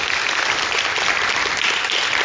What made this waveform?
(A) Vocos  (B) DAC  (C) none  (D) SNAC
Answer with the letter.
C